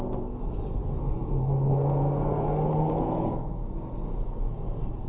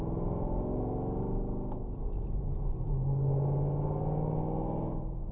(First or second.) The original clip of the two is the second